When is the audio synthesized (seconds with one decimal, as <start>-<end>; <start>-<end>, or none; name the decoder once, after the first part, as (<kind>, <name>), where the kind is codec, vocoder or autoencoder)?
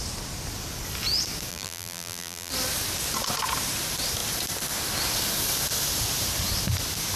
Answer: 1.5-2.5 (vocoder, BigVGAN v2)